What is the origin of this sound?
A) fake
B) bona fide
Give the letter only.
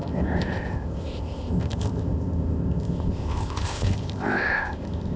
A